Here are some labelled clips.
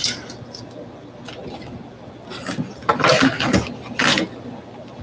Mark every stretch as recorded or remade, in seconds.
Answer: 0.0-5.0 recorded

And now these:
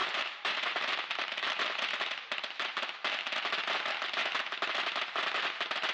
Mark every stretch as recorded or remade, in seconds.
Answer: 0.0-3.5 remade; 3.5-5.9 recorded